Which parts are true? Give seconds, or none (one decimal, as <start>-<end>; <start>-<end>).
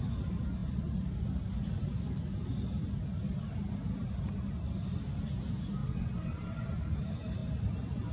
0.0-5.8; 6.7-8.1